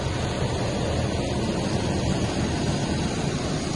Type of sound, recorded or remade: recorded